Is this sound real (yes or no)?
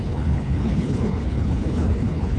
no